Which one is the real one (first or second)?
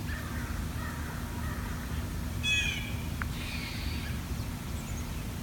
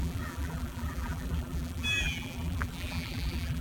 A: first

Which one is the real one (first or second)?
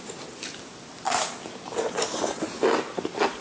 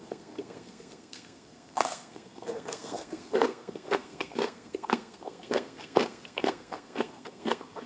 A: first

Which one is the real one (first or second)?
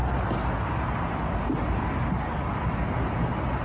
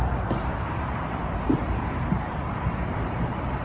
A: first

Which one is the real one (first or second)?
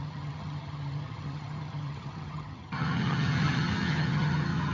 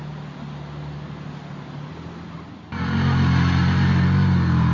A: second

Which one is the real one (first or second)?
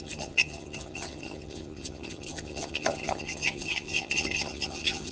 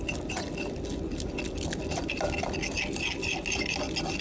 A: second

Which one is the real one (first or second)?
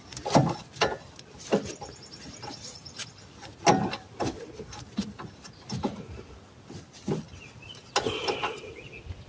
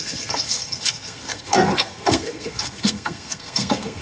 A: first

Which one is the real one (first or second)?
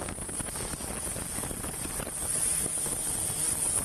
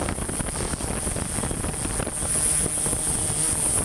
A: second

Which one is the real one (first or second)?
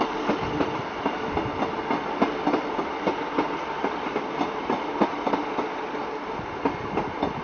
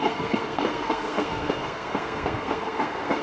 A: first